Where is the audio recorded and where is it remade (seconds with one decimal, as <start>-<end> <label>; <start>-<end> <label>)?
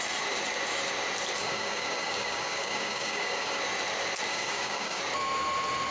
0.0-1.4 recorded; 1.4-3.6 remade; 3.6-4.3 recorded; 4.3-5.0 remade; 5.0-5.9 recorded